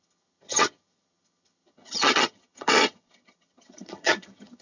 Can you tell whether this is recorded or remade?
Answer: remade